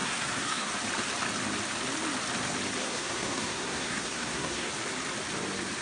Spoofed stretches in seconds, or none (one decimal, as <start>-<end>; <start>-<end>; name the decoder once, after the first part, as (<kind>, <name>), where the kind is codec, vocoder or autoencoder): 0.0-0.7 (codec, SNAC); 2.8-4.7